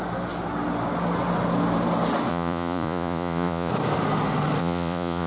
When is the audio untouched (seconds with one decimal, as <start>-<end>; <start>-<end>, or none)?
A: 0.0-2.3; 3.7-4.6